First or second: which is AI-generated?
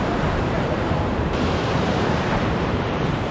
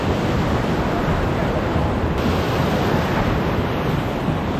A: first